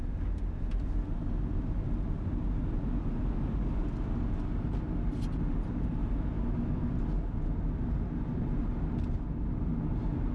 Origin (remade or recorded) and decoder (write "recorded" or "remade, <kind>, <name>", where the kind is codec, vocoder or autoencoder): recorded